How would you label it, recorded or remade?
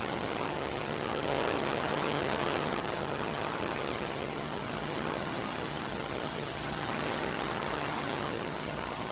remade